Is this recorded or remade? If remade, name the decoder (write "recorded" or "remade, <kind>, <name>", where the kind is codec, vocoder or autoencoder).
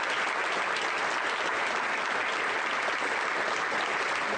recorded